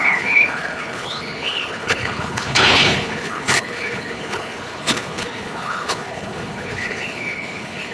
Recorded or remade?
remade